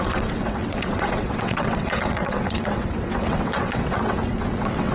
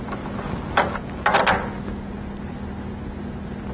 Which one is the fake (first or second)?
first